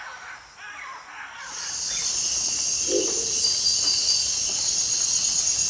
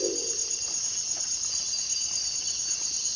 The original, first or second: first